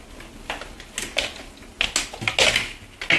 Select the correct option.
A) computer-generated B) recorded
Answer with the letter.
B